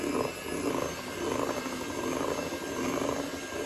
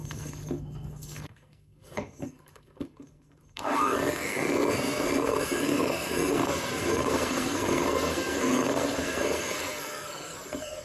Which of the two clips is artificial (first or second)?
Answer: second